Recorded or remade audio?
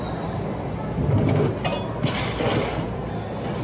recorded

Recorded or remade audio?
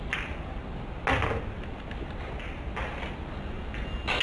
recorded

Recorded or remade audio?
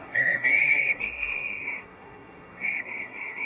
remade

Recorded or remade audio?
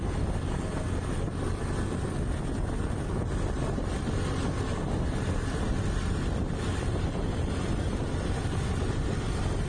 recorded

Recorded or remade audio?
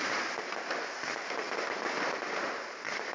recorded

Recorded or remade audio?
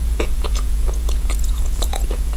remade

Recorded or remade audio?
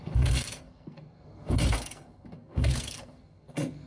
remade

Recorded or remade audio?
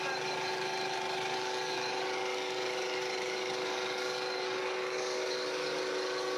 remade